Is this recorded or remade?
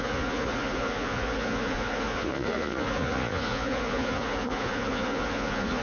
remade